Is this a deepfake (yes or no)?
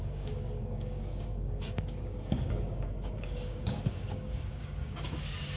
yes